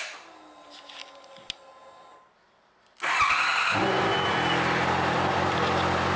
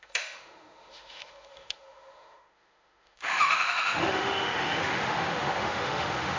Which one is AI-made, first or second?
second